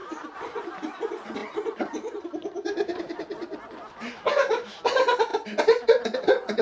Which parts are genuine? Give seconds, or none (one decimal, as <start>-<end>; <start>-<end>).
0.0-6.6